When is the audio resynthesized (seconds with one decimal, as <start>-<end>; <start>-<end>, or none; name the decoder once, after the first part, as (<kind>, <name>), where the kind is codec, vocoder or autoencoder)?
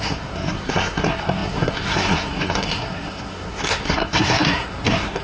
0.0-5.2 (codec, SNAC)